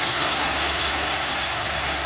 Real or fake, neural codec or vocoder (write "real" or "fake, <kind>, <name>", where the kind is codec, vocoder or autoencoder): fake, codec, SNAC